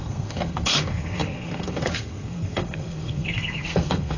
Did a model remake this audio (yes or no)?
yes